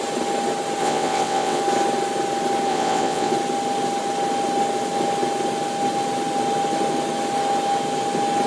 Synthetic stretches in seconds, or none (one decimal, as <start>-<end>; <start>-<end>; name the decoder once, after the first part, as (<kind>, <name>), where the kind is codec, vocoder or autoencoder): 0.8-1.6 (vocoder, WaveNeXt); 2.7-3.3

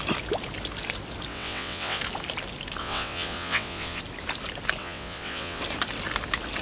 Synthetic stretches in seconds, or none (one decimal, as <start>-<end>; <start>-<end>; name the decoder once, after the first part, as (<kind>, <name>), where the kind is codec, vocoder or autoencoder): 1.3-2.0 (vocoder, WaveNeXt); 2.8-4.0; 4.8-5.6

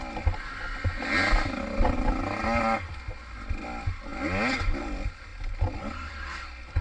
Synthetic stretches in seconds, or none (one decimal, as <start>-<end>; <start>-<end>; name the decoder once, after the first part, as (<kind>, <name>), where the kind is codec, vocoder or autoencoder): none